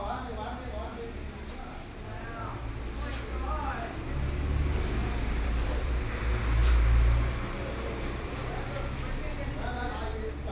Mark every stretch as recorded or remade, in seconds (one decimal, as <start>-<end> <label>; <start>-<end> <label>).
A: 0.0-5.0 recorded; 5.0-6.0 remade; 6.0-6.6 recorded; 6.6-8.8 remade; 8.8-10.5 recorded